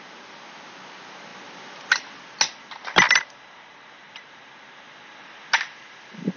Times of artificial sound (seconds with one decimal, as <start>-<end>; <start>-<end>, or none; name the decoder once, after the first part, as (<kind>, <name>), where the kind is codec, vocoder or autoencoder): none